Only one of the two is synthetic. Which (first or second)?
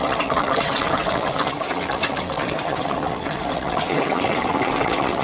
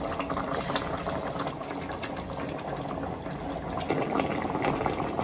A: first